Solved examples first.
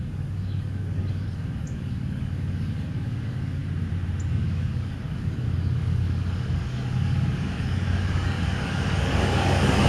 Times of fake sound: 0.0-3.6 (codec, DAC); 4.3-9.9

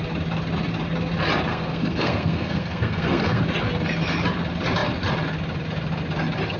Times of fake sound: 1.5-3.4 (codec, SNAC)

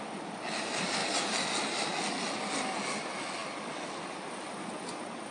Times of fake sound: none

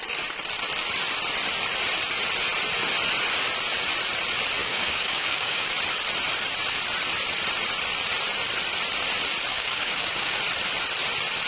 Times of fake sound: 4.6-5.7 (codec, DAC); 9.5-10.4